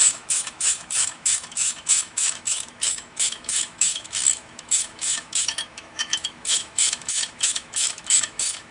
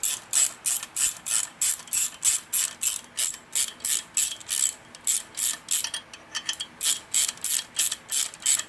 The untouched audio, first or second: second